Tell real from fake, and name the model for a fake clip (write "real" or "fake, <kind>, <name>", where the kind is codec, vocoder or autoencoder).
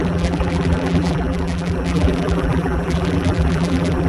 fake, vocoder, BigVGAN v2